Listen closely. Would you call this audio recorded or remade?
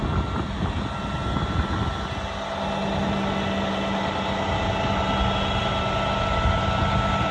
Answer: recorded